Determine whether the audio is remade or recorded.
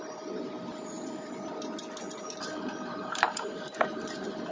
remade